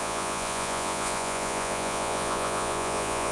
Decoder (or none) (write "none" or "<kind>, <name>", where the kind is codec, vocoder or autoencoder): vocoder, Vocos